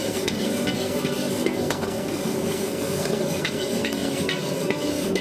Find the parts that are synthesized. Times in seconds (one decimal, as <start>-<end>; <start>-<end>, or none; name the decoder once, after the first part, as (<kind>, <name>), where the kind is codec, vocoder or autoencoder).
0.0-5.2 (codec, SNAC)